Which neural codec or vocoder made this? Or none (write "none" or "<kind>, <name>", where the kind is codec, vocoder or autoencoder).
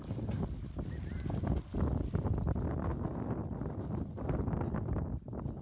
none